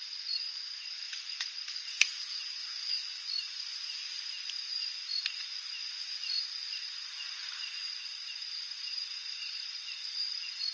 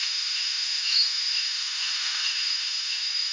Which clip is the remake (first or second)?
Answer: second